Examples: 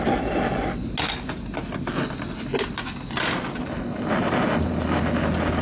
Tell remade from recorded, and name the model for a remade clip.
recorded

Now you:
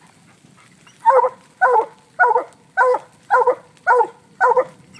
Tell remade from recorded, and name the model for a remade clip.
recorded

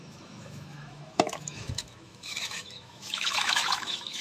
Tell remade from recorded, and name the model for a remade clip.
remade, autoencoder, DAC-VAE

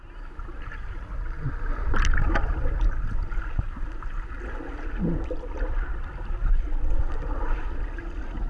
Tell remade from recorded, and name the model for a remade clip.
recorded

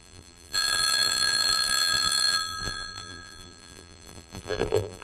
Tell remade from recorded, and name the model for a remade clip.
remade, vocoder, BigVGAN v2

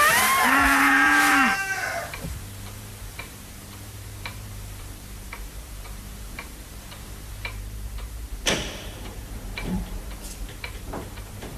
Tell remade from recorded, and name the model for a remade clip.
remade, vocoder, BigVGAN v2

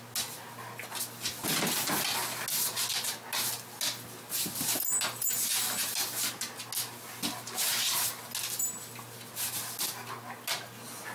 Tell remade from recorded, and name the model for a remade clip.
recorded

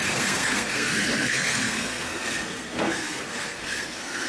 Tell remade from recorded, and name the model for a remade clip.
remade, codec, SNAC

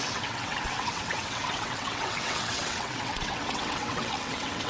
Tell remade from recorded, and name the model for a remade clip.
remade, vocoder, WaveNeXt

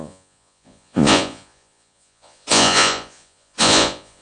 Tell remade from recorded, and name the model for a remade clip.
remade, vocoder, Vocos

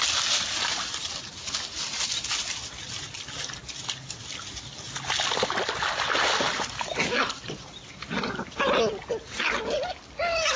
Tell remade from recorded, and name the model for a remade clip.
recorded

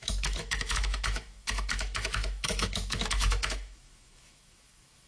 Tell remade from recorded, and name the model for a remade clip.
remade, autoencoder, DAC-VAE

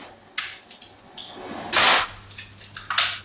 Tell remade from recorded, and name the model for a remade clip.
recorded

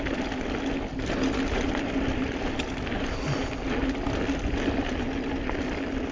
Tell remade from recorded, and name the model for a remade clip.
recorded